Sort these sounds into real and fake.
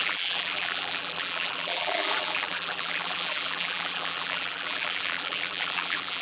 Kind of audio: fake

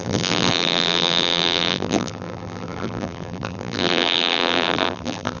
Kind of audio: fake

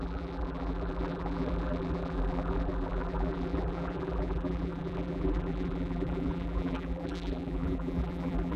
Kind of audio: fake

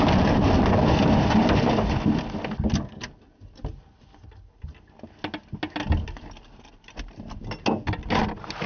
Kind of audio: real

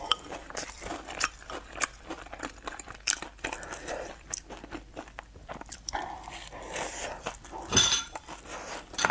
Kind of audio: fake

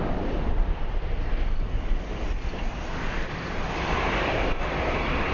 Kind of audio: real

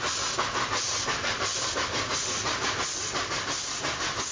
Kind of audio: real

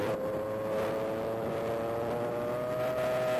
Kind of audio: real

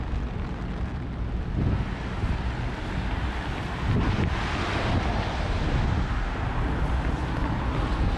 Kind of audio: real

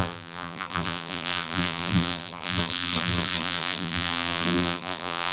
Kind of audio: fake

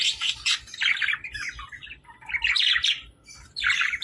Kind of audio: fake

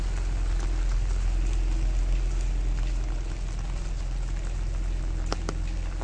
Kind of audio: real